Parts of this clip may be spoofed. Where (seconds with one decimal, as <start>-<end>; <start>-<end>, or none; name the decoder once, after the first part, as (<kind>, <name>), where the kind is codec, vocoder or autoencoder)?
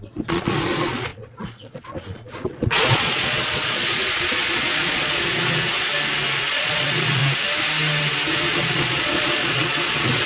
0.0-5.9 (vocoder, Vocos); 6.5-7.2; 8.4-10.3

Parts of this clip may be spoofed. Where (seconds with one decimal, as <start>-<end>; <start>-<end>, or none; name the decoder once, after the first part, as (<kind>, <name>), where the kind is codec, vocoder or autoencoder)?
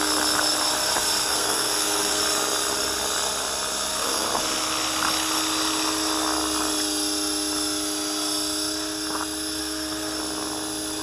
1.2-2.2 (codec, SNAC); 3.9-4.4; 9.6-10.2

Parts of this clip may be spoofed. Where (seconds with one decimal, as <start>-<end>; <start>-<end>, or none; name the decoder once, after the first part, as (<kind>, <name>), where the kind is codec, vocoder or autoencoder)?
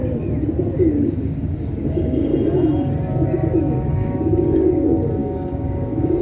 0.9-2.3 (codec, DAC); 3.7-6.2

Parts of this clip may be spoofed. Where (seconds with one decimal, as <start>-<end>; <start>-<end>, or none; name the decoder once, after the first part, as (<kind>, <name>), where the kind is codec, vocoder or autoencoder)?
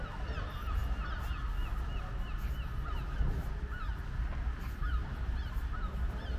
none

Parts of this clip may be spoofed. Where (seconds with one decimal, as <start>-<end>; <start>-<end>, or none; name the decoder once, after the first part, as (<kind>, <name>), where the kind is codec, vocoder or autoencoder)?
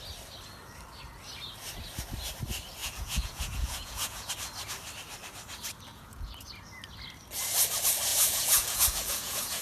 2.8-4.3 (vocoder, Vocos); 5.9-6.5; 8.1-9.6